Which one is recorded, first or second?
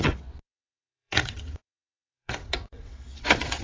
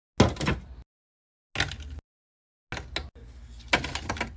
second